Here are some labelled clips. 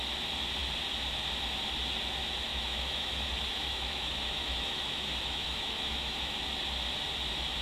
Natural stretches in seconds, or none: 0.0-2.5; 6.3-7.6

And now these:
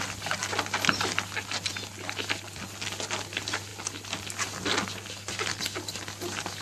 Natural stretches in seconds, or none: 0.0-6.6

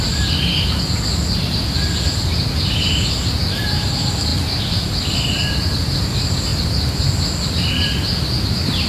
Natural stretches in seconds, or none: 0.0-8.9

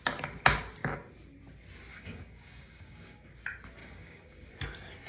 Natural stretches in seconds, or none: 0.0-1.9; 3.4-3.8; 4.5-5.1